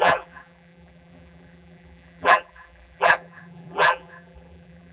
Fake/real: fake